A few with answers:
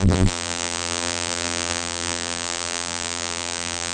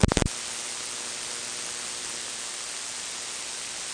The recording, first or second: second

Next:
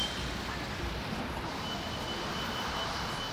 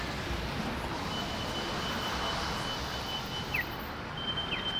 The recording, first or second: second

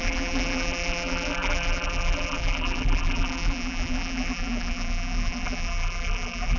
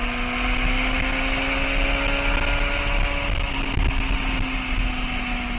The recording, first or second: second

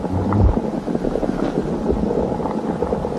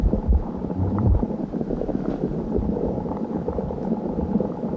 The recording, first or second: first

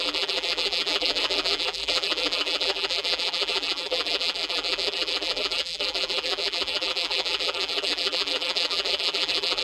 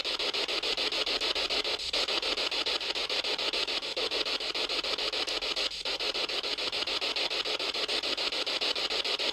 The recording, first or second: second